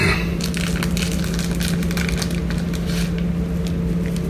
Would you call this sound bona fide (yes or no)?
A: yes